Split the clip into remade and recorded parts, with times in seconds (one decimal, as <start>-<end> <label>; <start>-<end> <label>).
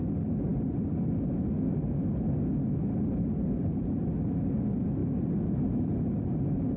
0.0-6.8 recorded